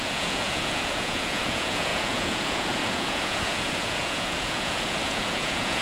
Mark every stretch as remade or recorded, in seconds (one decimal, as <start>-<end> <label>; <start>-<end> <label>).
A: 0.0-5.8 remade